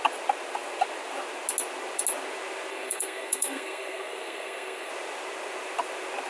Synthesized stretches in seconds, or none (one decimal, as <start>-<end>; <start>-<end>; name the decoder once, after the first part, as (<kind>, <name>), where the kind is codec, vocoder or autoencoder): 2.7-4.9 (codec, SNAC)